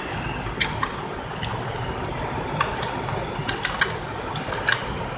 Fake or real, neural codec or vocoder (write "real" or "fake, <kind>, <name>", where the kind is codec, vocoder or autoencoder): real